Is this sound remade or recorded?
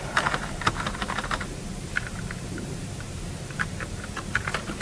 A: remade